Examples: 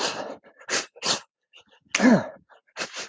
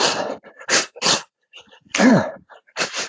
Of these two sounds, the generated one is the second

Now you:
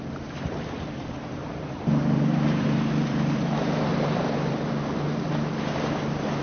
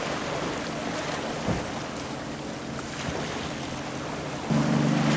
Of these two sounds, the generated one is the first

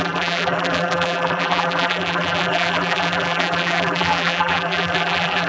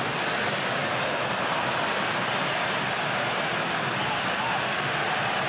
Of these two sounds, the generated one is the first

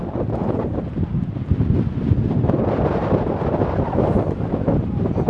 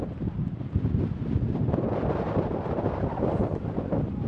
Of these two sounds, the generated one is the second